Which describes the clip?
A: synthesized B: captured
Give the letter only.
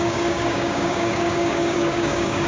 A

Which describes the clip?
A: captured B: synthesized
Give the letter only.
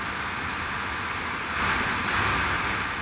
A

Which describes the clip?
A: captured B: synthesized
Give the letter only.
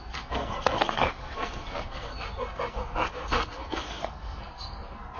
B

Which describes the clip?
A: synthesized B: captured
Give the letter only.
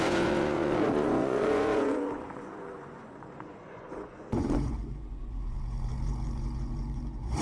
A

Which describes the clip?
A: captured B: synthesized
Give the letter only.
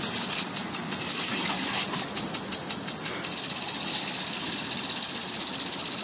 A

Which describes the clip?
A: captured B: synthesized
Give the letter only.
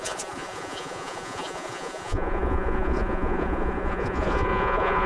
B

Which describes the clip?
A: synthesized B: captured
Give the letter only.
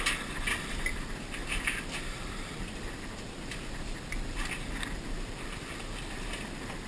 B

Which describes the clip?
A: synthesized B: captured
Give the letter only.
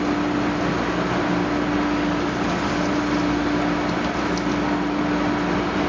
B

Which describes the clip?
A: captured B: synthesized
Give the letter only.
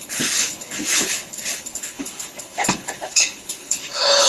B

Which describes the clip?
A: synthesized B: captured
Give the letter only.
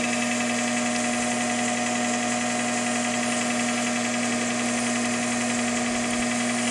B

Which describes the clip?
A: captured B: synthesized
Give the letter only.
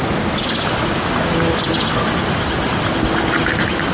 A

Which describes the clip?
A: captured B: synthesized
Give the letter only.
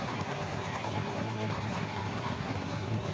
B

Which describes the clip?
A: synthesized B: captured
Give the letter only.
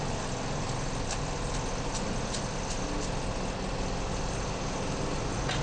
B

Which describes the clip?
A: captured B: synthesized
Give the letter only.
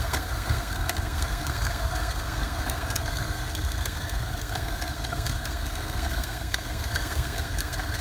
B